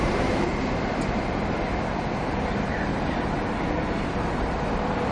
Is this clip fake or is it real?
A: fake